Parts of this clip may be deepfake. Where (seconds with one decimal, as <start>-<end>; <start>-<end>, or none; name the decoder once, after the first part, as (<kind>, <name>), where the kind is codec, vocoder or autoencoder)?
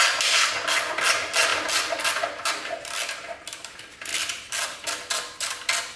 4.1-5.1 (vocoder, BigVGAN v2)